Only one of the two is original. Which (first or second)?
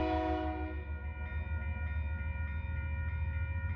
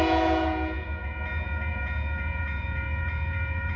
first